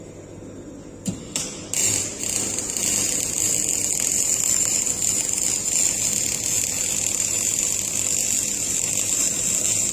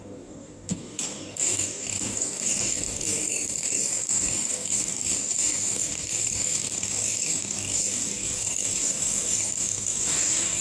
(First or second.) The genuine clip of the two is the first